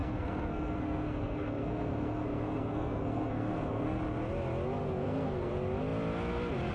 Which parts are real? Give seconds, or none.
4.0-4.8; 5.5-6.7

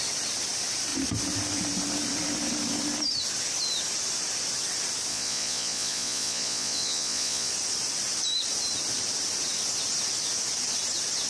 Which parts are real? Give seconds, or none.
0.0-5.1; 7.5-11.3

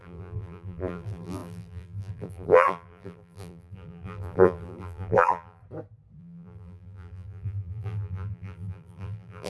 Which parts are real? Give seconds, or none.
5.6-6.2

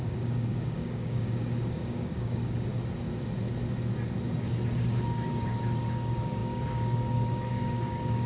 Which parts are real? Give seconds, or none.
2.7-4.8

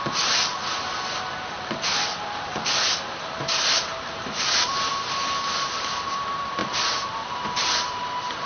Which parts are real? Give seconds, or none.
0.0-6.6; 8.0-8.5

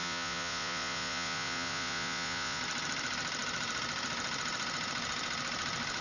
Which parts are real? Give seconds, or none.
2.6-6.0

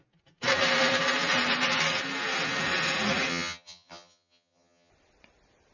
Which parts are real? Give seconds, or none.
0.0-3.3; 4.9-5.7

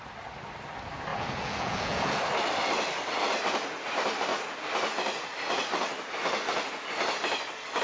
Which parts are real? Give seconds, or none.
0.0-1.1; 2.2-7.8